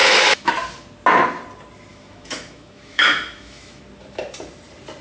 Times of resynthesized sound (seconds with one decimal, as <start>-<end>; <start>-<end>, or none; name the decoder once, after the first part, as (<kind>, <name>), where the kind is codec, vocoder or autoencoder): 0.0-0.5 (autoencoder, DAC-VAE); 1.9-3.8